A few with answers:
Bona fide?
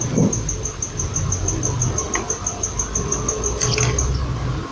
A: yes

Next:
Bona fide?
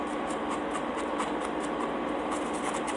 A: yes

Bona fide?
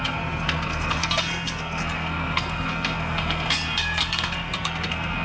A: no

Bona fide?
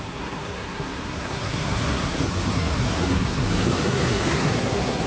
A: no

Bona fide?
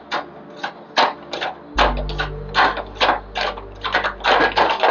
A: yes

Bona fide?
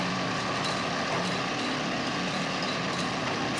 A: yes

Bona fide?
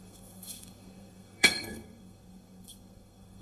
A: no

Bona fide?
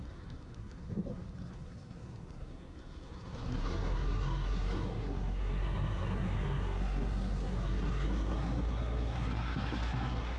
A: no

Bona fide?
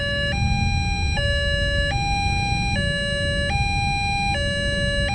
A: yes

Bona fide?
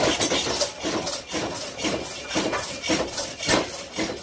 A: yes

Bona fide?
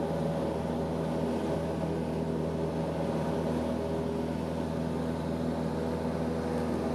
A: yes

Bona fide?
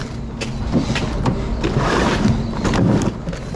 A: yes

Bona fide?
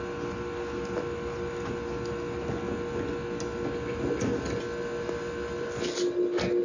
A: yes